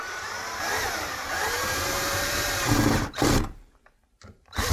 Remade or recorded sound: remade